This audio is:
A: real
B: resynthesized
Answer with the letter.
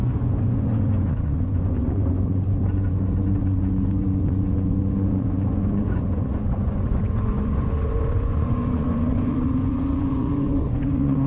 B